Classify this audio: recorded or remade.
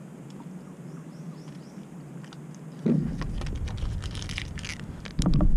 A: recorded